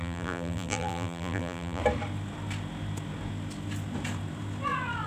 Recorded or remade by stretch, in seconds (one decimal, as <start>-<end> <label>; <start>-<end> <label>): 0.0-1.8 remade; 1.8-5.1 recorded